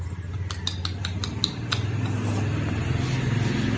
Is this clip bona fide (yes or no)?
yes